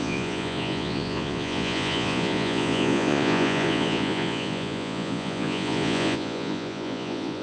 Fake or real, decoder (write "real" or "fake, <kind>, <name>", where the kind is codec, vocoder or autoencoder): fake, vocoder, Vocos